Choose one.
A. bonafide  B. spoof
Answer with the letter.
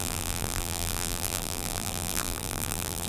B